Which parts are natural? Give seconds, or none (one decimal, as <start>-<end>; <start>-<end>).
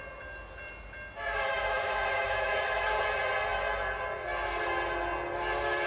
0.0-1.5; 3.0-5.9